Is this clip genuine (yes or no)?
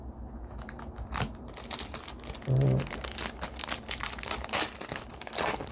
yes